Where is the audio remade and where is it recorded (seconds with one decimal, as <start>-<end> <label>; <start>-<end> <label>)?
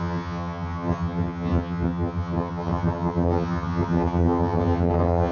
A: 0.0-5.3 remade